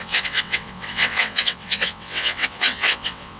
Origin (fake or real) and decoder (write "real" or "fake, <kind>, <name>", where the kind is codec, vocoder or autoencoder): fake, vocoder, WaveNeXt